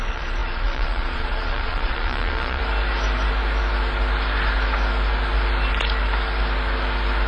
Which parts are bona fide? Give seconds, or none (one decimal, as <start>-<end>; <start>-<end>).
2.6-7.3